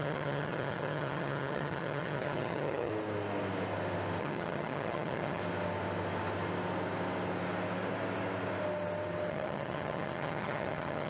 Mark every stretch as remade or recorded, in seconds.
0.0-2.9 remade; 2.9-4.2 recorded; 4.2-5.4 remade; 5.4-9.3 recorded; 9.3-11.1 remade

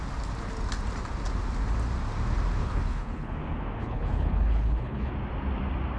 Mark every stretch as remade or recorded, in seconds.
0.0-2.6 recorded; 2.6-3.3 remade; 3.3-3.8 recorded; 3.8-5.1 remade; 5.1-6.0 recorded